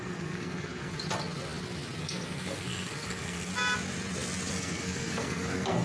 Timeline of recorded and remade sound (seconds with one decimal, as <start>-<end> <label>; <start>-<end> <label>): 0.0-0.9 remade; 0.9-2.0 recorded; 2.0-3.5 remade; 3.5-4.5 recorded; 4.5-5.8 remade